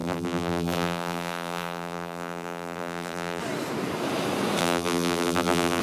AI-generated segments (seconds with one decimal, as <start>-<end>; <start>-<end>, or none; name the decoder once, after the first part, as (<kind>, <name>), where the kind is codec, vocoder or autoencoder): 0.0-3.4 (vocoder, BigVGAN v2); 4.6-5.8